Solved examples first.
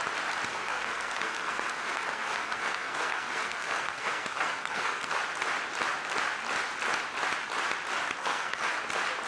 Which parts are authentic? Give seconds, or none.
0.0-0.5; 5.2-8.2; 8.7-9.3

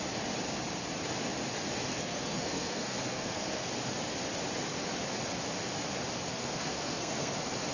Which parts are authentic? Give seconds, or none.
0.0-1.9; 3.7-6.3; 7.3-7.7

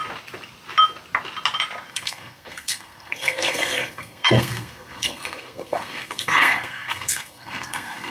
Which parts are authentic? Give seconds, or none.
0.0-1.9